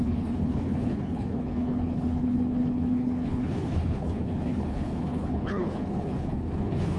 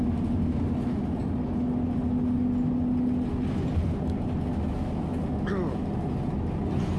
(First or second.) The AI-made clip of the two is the first